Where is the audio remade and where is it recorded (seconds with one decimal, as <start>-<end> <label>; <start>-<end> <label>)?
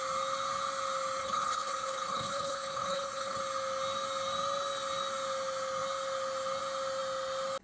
0.0-1.2 recorded; 1.2-3.4 remade; 3.4-7.6 recorded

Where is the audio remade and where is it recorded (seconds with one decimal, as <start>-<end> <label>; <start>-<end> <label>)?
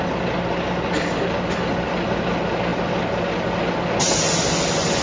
0.0-5.0 recorded